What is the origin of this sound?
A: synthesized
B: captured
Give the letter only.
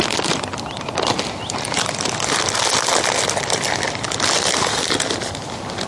B